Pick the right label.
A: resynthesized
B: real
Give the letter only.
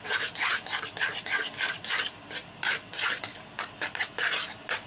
B